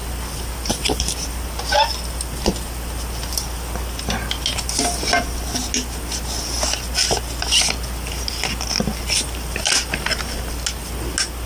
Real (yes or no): yes